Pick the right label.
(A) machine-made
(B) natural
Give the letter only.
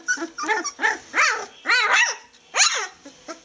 B